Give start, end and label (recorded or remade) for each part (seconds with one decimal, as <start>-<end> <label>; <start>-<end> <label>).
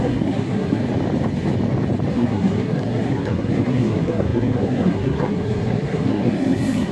0.0-0.8 remade; 0.8-2.1 recorded; 2.1-6.9 remade